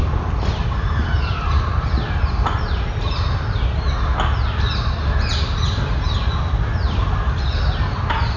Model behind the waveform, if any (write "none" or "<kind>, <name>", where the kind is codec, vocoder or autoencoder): none